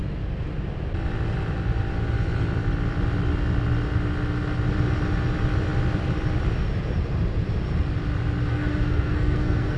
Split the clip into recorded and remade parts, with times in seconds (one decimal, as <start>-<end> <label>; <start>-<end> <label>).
0.0-8.5 recorded; 8.5-9.8 remade